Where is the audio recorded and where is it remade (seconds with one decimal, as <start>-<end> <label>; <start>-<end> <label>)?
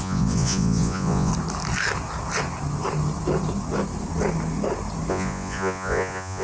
0.0-1.3 remade; 1.3-5.1 recorded; 5.1-6.4 remade